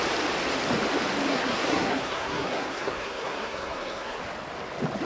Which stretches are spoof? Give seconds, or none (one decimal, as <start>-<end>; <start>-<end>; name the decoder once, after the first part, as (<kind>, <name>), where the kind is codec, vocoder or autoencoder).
1.3-4.2 (codec, SNAC)